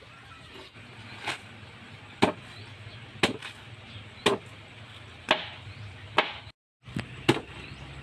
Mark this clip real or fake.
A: real